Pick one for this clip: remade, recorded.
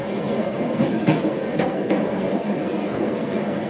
remade